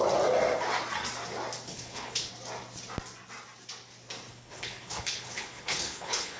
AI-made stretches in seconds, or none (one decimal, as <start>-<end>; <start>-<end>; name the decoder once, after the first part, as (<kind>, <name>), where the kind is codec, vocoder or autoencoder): 1.7-2.3 (codec, HILCodec); 4.3-6.4